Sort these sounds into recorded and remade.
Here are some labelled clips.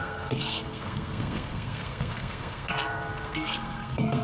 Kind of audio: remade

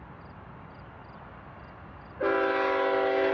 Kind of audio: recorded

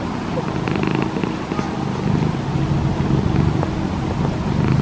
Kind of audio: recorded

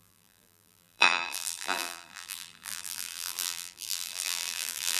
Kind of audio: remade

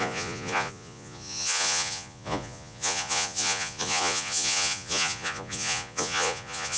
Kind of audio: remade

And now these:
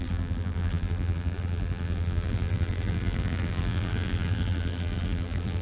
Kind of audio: remade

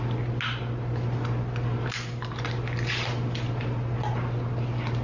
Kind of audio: recorded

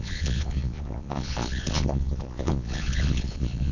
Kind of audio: remade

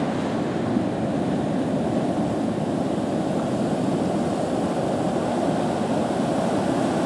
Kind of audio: recorded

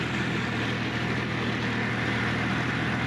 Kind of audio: recorded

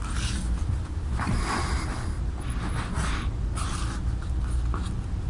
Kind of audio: recorded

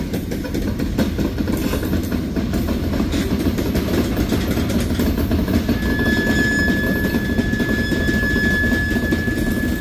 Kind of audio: recorded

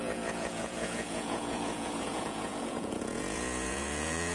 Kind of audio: remade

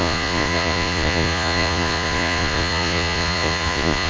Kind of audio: remade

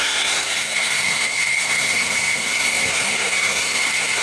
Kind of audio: remade